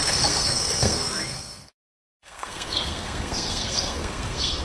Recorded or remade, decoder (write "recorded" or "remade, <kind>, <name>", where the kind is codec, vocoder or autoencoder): remade, codec, SNAC